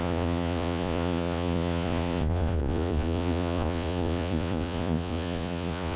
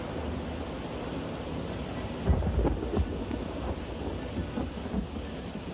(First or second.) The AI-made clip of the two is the first